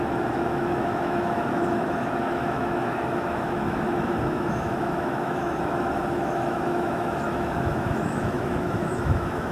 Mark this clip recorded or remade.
remade